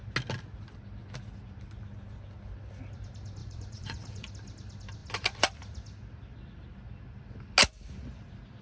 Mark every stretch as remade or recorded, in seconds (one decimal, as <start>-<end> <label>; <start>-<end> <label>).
0.0-3.4 recorded; 3.4-4.3 remade; 4.3-8.6 recorded